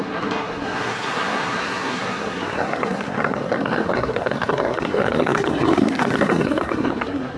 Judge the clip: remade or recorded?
remade